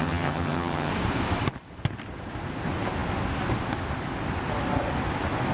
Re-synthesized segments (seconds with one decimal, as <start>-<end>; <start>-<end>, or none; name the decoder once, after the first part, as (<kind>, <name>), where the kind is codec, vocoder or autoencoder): 0.0-0.9 (vocoder, HiFi-GAN)